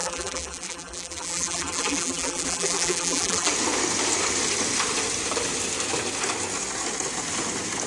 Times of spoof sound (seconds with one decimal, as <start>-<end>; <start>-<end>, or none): 0.0-3.5